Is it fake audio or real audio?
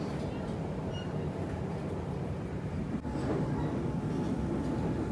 fake